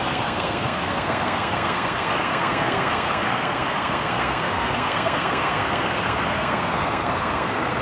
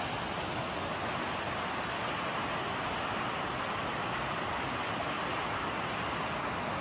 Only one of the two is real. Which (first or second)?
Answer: second